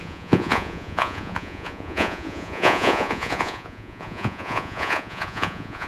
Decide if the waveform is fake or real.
fake